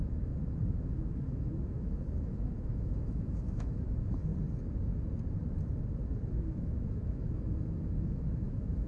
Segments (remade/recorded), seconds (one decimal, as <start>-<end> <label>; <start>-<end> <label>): 0.0-4.3 remade; 4.3-6.3 recorded; 6.3-8.9 remade